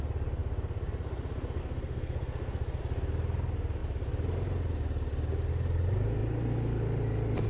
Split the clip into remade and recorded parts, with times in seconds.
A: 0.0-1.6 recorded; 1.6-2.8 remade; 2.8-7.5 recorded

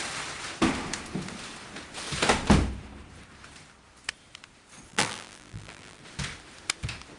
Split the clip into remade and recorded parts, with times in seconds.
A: 0.0-4.9 recorded; 4.9-6.0 remade; 6.0-7.2 recorded

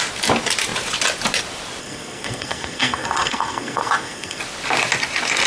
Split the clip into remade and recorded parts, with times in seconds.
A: 0.0-1.8 recorded; 1.8-4.4 remade; 4.4-5.5 recorded